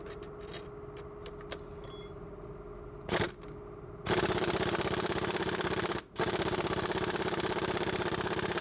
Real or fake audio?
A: real